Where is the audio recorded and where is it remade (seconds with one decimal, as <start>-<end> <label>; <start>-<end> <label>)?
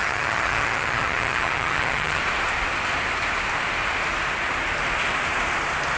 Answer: 0.0-2.2 remade; 2.2-6.0 recorded